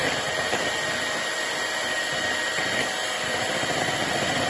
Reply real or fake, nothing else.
fake